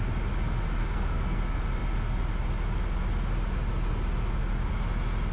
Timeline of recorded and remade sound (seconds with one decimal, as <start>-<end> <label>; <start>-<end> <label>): 0.0-0.8 recorded; 0.8-1.4 remade; 1.4-5.3 recorded